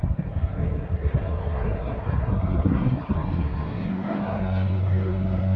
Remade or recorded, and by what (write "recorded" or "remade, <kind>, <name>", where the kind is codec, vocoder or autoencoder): remade, codec, SNAC